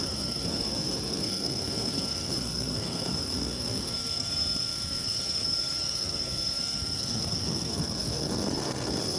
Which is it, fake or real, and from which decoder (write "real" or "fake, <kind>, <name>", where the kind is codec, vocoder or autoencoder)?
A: fake, codec, SNAC